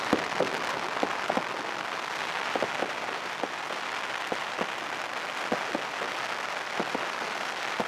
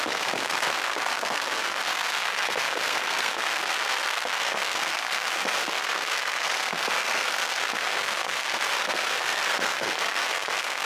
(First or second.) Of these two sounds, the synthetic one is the second